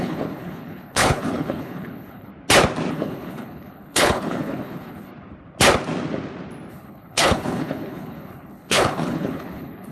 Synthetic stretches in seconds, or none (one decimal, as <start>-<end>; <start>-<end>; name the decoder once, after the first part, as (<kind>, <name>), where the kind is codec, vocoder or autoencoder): 0.0-2.3 (codec, HILCodec); 2.9-5.1; 6.7-9.9